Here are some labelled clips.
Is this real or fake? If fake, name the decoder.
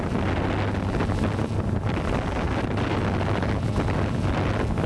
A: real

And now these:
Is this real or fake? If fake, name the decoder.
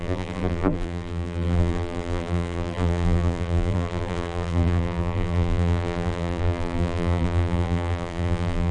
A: fake, vocoder, BigVGAN v2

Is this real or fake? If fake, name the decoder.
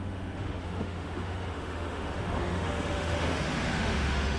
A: fake, autoencoder, DAC-VAE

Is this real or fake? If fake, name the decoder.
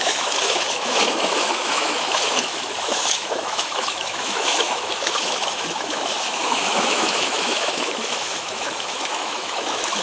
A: fake, autoencoder, DAC-VAE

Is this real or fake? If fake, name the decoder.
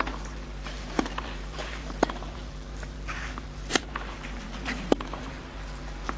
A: fake, vocoder, BigVGAN v2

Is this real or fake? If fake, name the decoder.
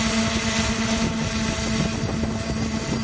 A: real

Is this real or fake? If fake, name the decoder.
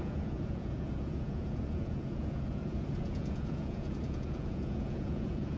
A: fake, vocoder, Vocos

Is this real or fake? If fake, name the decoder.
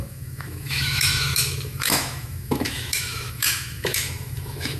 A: fake, autoencoder, DAC-VAE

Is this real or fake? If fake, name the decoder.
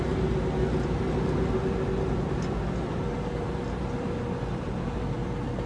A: real